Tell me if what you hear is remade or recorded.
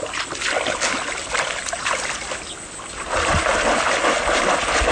recorded